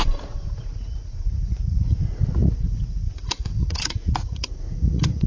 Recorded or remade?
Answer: remade